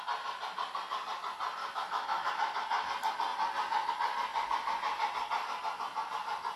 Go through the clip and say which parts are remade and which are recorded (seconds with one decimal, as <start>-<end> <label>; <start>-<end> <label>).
0.0-1.6 recorded; 1.6-2.3 remade; 2.3-6.6 recorded